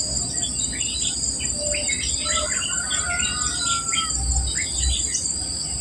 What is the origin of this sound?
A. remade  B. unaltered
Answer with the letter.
B